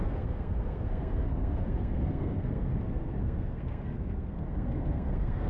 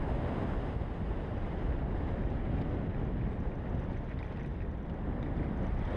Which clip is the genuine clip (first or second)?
second